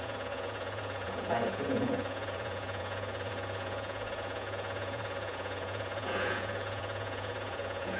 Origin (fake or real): fake